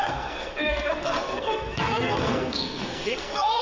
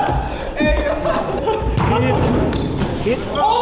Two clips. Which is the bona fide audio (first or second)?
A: second